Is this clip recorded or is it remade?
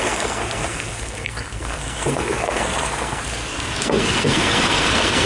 remade